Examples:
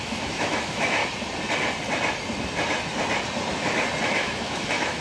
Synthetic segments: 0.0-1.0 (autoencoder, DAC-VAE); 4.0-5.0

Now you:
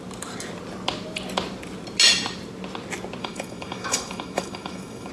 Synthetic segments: 3.2-5.1 (autoencoder, DAC-VAE)